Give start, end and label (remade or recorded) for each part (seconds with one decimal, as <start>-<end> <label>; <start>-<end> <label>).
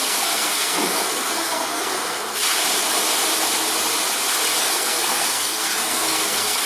0.0-2.4 remade; 2.4-4.6 recorded; 4.6-6.7 remade